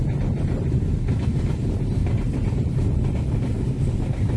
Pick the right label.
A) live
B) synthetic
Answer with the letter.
B